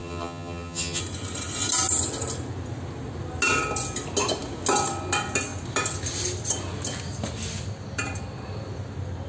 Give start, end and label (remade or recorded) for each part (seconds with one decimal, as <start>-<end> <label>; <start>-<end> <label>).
0.0-1.0 remade; 1.0-9.3 recorded